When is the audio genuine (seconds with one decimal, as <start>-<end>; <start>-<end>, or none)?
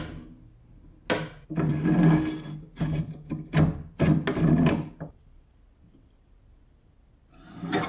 0.0-7.9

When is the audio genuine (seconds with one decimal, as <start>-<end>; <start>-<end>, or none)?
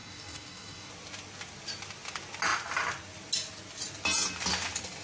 0.9-5.0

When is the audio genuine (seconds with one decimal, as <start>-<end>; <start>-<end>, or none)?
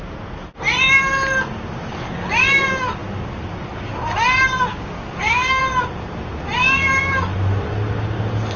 0.0-4.7; 5.6-8.6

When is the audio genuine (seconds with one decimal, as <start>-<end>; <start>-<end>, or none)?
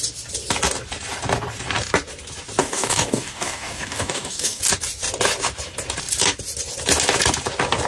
0.0-2.6; 4.6-7.9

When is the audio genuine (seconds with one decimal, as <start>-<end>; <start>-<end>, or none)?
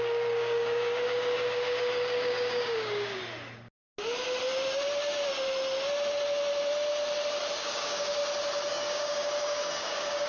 3.2-7.6; 8.2-8.7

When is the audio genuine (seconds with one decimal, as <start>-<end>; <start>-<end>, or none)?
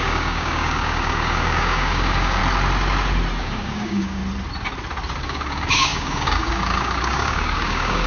2.4-3.4; 4.2-5.2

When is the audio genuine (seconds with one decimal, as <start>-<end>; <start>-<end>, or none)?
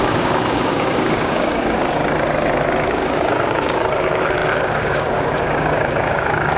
2.0-2.9